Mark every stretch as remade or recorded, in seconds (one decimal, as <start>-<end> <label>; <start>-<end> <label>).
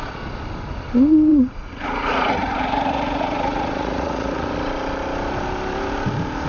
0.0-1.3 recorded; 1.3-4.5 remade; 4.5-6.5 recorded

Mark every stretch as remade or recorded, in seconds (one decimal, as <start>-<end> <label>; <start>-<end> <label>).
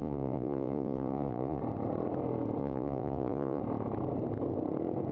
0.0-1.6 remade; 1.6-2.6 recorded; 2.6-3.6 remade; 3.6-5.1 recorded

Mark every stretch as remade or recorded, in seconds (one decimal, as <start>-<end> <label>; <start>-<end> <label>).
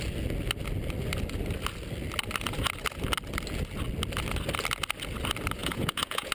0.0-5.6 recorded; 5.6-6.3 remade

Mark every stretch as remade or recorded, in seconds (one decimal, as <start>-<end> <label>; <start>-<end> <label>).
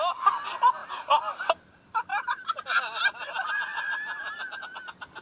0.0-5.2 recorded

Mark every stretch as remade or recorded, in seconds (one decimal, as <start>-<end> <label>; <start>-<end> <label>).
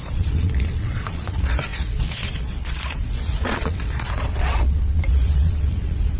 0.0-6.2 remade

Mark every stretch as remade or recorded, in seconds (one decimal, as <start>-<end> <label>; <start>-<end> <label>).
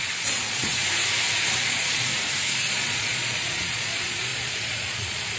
0.0-0.8 remade; 0.8-1.5 recorded; 1.5-2.1 remade; 2.1-2.7 recorded; 2.7-5.4 remade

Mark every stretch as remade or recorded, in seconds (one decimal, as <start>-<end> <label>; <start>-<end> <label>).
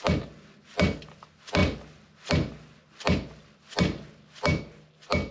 0.0-5.3 recorded